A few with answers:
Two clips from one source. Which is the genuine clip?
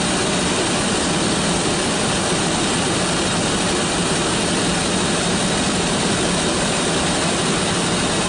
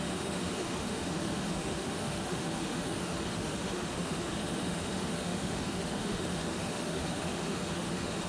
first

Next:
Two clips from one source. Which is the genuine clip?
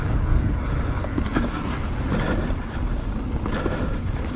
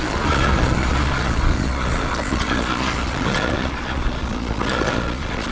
first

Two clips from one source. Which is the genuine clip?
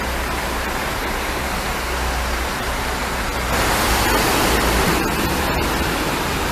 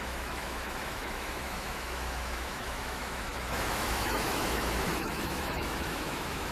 first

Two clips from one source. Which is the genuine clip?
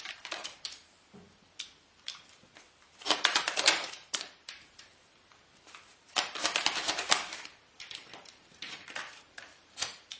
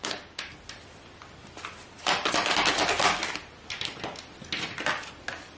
second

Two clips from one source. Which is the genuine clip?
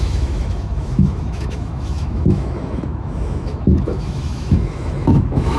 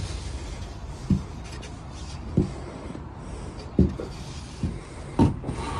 second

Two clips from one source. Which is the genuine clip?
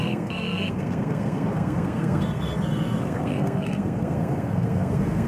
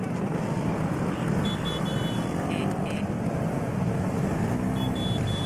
second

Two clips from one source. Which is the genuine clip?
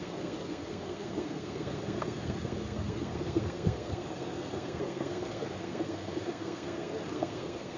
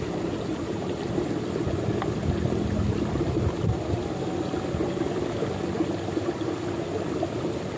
second